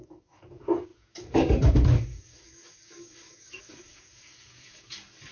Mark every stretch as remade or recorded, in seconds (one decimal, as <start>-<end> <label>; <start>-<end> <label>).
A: 0.0-5.3 remade